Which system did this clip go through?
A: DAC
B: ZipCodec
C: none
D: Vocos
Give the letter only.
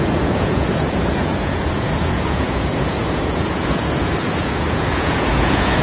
D